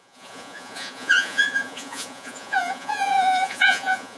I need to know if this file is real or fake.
fake